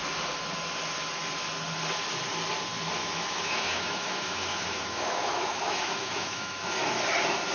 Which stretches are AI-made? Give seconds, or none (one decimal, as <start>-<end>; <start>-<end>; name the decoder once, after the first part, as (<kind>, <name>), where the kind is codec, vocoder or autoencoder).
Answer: 3.0-6.7 (autoencoder, DAC-VAE)